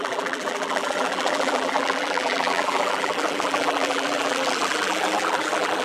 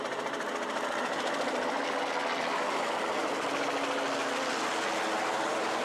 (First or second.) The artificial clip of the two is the first